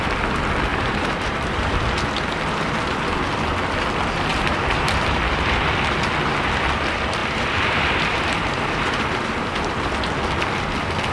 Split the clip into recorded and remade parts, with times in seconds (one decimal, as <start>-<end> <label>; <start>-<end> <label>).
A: 0.0-0.7 recorded; 0.7-1.7 remade; 1.7-4.3 recorded; 4.3-5.2 remade; 5.2-7.2 recorded; 7.2-9.9 remade; 9.9-11.1 recorded